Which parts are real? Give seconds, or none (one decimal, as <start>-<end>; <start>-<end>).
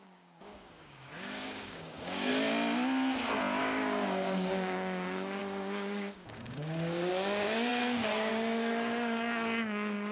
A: 2.3-3.6